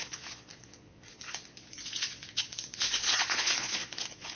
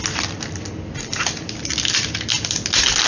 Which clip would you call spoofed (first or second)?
first